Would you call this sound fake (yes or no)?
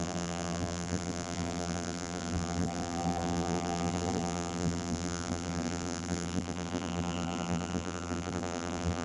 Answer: yes